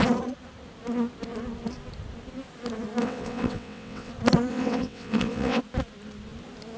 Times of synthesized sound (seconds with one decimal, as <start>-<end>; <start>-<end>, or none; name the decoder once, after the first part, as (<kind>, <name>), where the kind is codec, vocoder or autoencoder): 3.0-4.1 (vocoder, WaveNeXt); 4.5-5.6